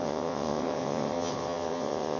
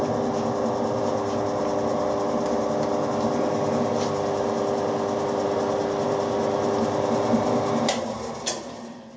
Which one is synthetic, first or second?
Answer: first